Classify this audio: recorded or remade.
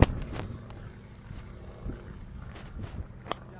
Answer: recorded